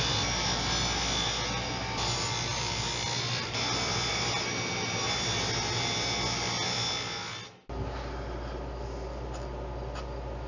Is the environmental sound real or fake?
real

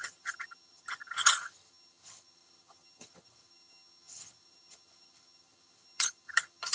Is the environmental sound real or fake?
fake